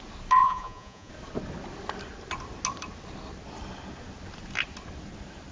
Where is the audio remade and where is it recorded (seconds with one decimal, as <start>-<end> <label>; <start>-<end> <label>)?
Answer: 0.0-0.4 recorded; 0.4-1.1 remade; 1.1-5.5 recorded